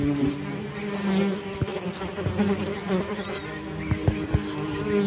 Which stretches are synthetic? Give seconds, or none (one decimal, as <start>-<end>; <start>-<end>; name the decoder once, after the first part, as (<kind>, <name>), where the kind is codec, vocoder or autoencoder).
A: none